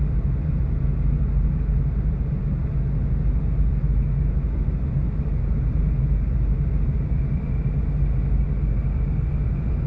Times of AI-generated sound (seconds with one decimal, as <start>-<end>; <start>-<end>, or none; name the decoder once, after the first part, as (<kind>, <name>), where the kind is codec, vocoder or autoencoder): none